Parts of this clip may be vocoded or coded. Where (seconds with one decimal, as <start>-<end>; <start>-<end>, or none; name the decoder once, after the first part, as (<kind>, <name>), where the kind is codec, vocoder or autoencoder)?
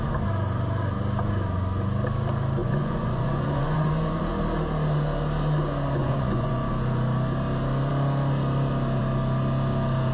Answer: 2.6-4.2 (vocoder, Vocos); 6.0-6.7